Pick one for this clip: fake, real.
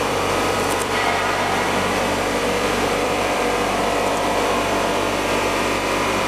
fake